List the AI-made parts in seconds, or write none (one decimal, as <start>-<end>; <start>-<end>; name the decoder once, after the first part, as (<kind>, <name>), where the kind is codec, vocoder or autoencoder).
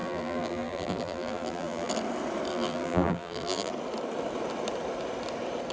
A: 0.0-1.9 (vocoder, BigVGAN v2); 2.5-3.7